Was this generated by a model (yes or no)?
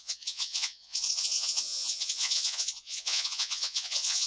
yes